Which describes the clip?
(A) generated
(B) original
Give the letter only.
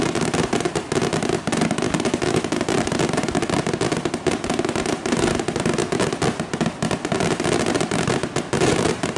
B